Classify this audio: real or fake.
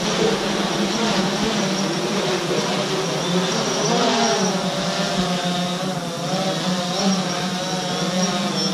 real